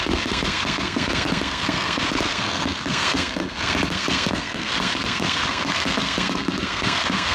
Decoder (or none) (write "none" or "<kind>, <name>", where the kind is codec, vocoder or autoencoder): codec, SNAC